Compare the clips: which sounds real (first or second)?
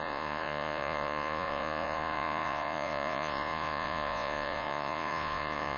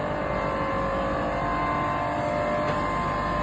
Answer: second